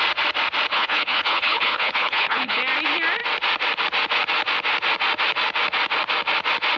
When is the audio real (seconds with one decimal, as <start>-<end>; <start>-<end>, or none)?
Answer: 0.0-0.7; 2.6-6.8